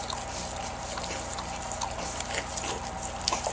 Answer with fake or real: real